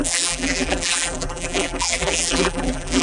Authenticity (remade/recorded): remade